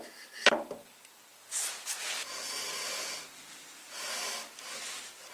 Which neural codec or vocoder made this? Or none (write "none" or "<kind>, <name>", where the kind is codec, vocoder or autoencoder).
none